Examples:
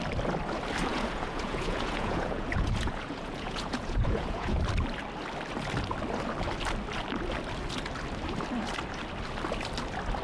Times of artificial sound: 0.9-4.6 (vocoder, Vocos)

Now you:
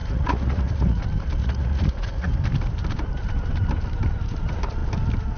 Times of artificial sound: 0.0-1.0 (vocoder, Vocos); 1.4-2.3

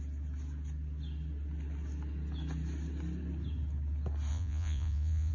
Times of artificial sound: 4.3-5.3 (vocoder, Vocos)

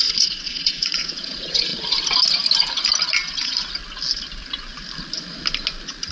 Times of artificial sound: 0.0-1.7 (vocoder, Vocos); 3.3-3.8

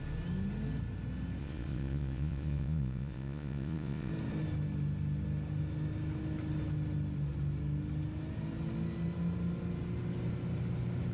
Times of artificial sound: 1.4-4.1 (vocoder, Vocos)

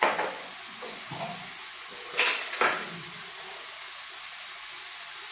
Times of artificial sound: 0.0-1.9 (vocoder, Vocos); 4.6-5.3

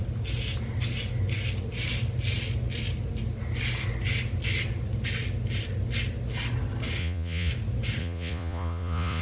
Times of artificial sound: 7.0-7.5 (vocoder, Vocos); 8.0-9.2

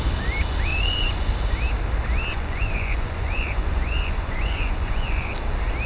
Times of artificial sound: 0.7-1.3 (vocoder, Vocos); 2.3-5.3